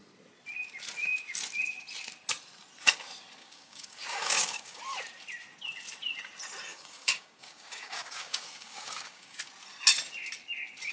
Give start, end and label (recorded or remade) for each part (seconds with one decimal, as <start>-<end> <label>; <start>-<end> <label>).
0.0-3.4 recorded; 3.4-4.8 remade; 4.8-6.7 recorded; 6.7-9.4 remade; 9.4-10.9 recorded